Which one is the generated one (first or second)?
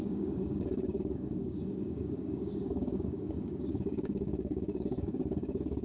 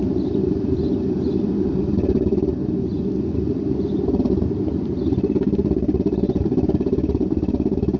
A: first